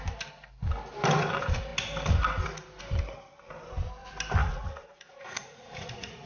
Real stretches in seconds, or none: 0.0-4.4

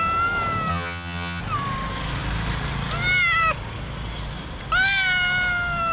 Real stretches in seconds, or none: 0.0-0.7; 1.4-5.9

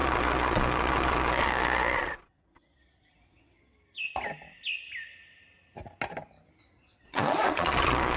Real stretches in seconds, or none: 3.7-6.8

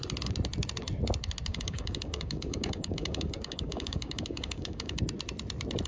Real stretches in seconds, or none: 0.0-1.5; 5.0-5.9